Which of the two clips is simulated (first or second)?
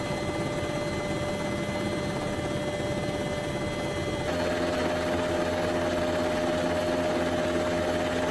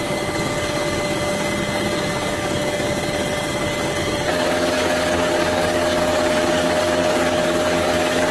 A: second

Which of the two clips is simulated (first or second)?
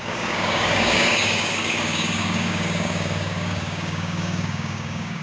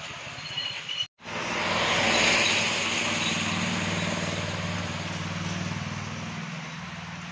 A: first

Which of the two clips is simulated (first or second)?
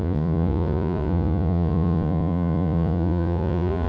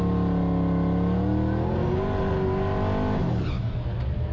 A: first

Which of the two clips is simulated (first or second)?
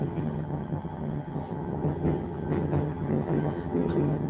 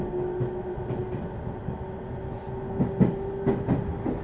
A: first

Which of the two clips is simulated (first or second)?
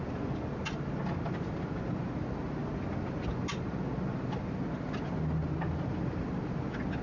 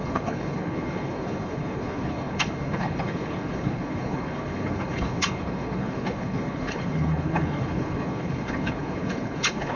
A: second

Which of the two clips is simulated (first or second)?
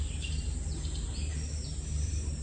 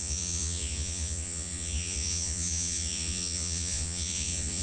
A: second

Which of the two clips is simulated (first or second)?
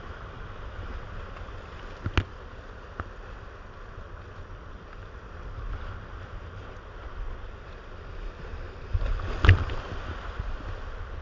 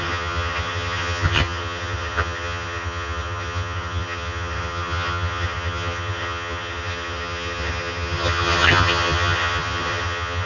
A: second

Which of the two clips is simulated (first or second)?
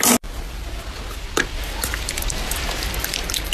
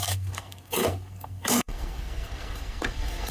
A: second